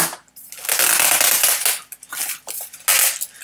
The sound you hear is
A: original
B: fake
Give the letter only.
A